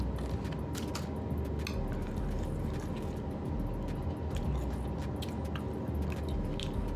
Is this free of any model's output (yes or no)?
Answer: yes